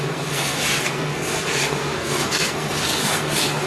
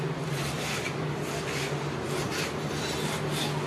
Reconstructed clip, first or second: first